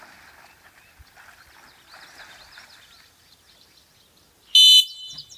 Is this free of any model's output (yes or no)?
yes